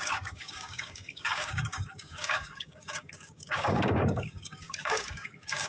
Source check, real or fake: fake